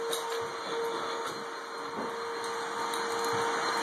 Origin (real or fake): real